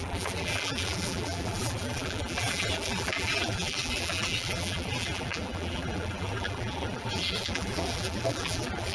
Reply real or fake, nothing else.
fake